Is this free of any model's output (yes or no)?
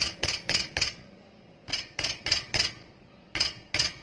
no